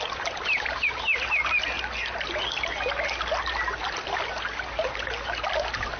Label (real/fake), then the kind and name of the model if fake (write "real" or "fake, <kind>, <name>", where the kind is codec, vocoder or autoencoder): real